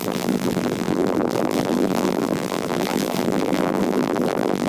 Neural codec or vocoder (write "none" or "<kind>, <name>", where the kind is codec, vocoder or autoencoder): vocoder, BigVGAN v2